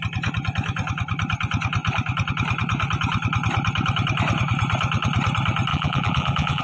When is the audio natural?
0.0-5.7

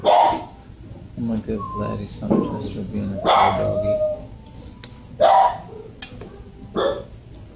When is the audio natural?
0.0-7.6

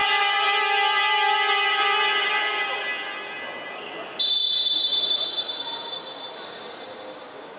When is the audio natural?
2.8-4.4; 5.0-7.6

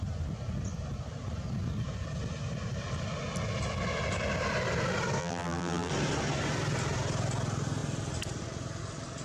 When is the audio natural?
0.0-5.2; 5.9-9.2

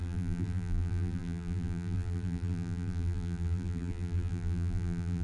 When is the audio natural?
none

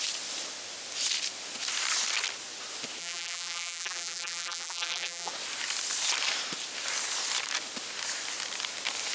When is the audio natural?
0.0-3.0; 5.3-9.1

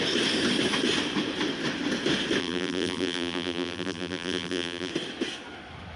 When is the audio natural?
0.0-2.4; 4.9-6.0